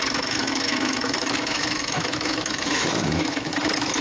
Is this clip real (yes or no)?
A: no